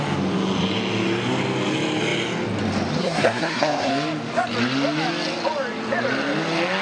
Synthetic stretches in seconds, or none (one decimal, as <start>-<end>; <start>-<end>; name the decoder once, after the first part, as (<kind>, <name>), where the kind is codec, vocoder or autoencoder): 3.0-3.9 (codec, SNAC)

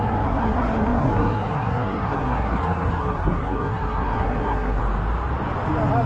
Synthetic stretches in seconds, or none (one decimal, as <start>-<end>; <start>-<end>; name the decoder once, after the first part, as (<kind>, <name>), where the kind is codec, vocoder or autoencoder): 0.0-4.8 (codec, SNAC)

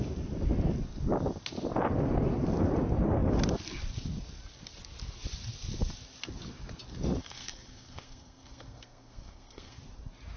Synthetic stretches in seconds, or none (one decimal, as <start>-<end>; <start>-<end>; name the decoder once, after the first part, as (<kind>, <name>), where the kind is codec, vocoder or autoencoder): 7.2-9.8 (codec, SNAC)

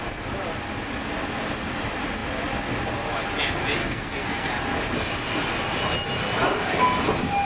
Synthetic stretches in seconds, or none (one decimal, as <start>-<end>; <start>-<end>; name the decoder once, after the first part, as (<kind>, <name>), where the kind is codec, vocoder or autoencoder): 3.8-4.5 (codec, SNAC)

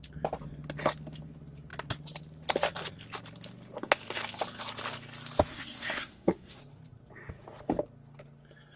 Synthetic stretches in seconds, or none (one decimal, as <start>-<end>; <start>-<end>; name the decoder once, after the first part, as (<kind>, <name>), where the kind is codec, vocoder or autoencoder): 5.5-6.6 (codec, SNAC)

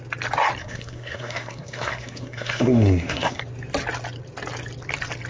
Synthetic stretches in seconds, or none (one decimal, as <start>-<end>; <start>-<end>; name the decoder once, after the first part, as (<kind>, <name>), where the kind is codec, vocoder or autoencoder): 0.6-3.4 (codec, SNAC)